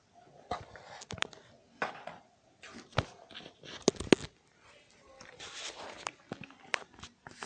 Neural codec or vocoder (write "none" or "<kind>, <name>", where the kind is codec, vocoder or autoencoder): none